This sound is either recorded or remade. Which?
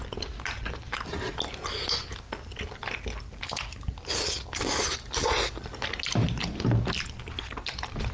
recorded